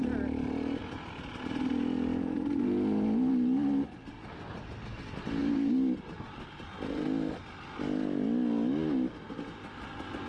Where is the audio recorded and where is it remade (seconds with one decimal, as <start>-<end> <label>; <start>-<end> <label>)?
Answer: 0.0-10.3 recorded